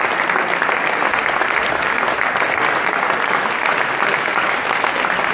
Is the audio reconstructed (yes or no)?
no